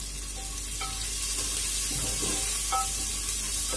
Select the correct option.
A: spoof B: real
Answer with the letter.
B